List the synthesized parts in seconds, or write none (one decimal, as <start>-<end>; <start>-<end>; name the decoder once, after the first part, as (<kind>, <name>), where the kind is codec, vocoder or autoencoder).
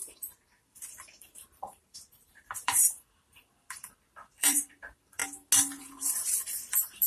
0.0-5.2 (vocoder, BigVGAN v2); 5.8-7.1